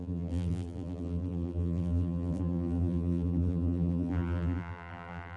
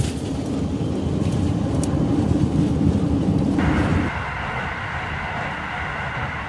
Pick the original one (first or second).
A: second